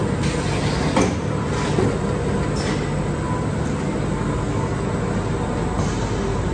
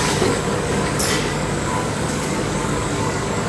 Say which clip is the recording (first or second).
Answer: first